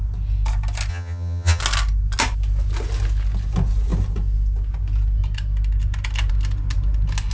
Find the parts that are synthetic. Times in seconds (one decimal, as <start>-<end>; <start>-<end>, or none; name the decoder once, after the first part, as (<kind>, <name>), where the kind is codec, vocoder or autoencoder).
0.9-1.6 (vocoder, HiFi-GAN)

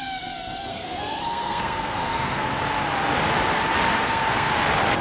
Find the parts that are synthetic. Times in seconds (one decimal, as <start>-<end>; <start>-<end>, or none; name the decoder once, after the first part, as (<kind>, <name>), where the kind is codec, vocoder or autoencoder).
0.7-2.5 (codec, SNAC); 4.0-4.5

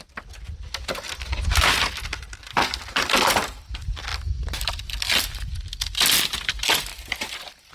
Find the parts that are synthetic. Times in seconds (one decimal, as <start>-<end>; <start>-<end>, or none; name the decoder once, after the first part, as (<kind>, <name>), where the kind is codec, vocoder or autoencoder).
0.0-7.7 (vocoder, BigVGAN v2)

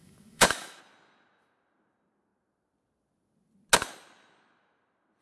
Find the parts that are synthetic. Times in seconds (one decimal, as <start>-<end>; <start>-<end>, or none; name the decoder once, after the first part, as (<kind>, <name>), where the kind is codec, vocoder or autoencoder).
0.0-0.8 (autoencoder, DAC-VAE)

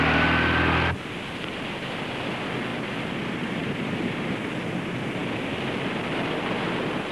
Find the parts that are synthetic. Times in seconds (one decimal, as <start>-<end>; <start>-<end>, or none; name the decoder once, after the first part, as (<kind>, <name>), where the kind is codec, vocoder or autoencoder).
2.7-4.5 (vocoder, BigVGAN v2)

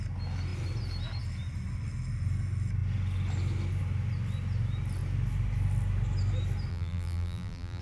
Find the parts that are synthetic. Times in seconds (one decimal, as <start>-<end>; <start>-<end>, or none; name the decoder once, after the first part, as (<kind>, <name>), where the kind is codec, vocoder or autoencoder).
6.7-7.8 (vocoder, BigVGAN v2)

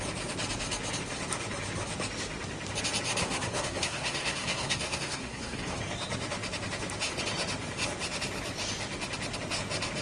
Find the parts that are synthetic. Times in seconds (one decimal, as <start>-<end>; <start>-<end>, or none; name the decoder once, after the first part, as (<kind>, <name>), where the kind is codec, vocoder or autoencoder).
3.2-5.8 (codec, SNAC)